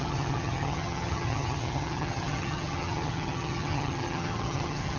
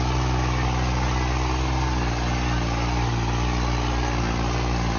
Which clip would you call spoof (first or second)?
first